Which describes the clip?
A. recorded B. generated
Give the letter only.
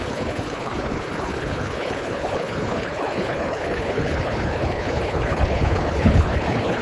B